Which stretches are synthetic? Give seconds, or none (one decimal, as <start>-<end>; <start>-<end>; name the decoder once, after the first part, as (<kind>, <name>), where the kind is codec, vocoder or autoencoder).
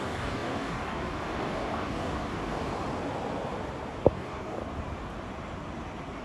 0.0-2.7 (codec, DAC); 4.1-4.6